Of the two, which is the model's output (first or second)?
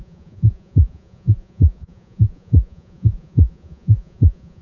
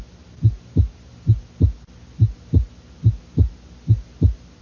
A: first